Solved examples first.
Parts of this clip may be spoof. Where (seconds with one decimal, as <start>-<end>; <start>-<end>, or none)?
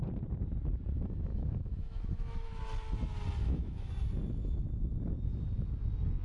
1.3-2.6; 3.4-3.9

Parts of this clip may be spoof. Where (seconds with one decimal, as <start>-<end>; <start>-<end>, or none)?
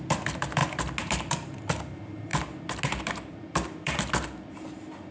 0.0-0.6; 1.3-2.3; 3.0-5.1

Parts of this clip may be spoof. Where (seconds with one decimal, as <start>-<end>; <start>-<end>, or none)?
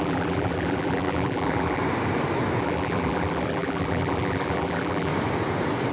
0.0-1.8; 2.6-5.1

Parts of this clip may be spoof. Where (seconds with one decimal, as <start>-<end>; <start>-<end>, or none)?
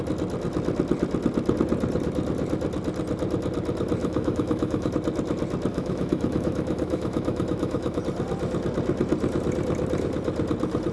4.0-4.9; 5.7-8.0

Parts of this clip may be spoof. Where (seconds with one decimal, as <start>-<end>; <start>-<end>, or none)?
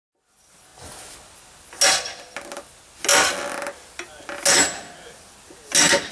none